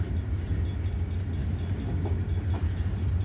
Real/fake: real